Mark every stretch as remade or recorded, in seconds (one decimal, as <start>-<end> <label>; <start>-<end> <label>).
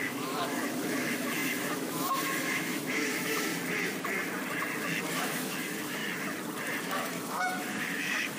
0.0-3.5 remade; 3.5-5.1 recorded; 5.1-6.0 remade; 6.0-6.8 recorded; 6.8-8.4 remade